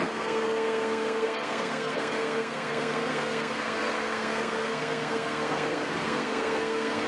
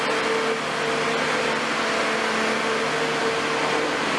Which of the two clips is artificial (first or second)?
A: first